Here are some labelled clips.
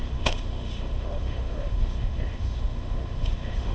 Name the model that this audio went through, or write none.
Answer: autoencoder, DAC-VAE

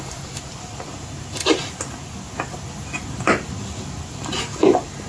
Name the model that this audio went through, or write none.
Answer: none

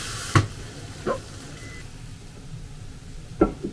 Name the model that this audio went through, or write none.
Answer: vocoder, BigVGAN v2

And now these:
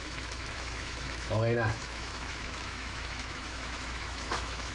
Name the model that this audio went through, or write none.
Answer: autoencoder, DAC-VAE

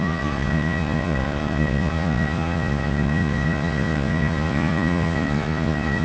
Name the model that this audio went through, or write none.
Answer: vocoder, Vocos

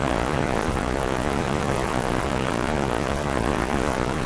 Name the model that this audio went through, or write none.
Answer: vocoder, Vocos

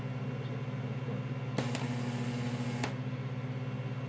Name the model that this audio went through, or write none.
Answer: none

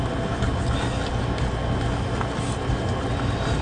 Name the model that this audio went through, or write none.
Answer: none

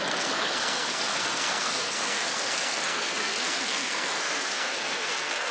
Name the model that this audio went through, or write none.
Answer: codec, SNAC